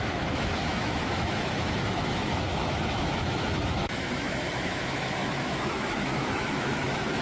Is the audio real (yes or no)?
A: no